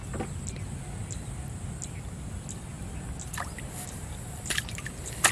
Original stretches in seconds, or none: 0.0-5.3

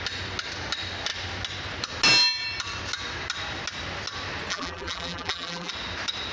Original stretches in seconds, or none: 0.0-4.5; 5.7-6.3

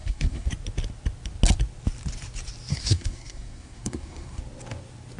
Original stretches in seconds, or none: 0.5-2.7; 4.4-5.2

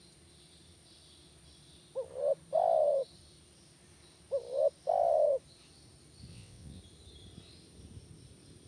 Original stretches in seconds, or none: 0.0-6.3; 6.8-8.7

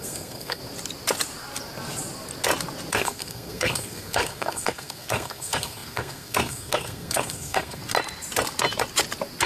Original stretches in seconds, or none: 0.6-2.9; 7.8-9.5

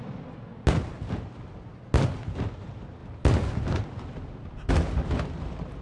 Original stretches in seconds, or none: 0.0-5.8

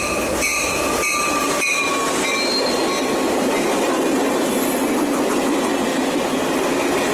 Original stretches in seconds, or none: 0.0-7.1

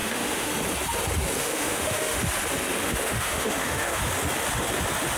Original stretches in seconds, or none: 0.5-1.4; 2.2-2.8; 4.0-5.2